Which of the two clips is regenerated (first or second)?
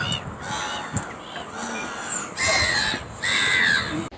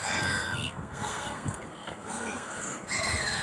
second